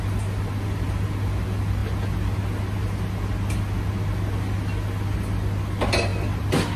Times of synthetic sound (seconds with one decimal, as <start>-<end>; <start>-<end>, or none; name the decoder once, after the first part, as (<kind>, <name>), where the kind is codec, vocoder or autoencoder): none